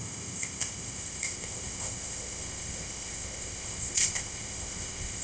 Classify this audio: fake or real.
fake